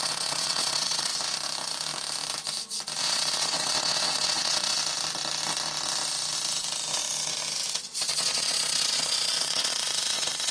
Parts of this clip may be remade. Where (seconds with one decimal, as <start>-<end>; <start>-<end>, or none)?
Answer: 0.0-1.1; 3.0-4.8; 7.7-10.5